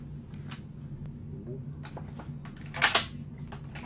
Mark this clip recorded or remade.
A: recorded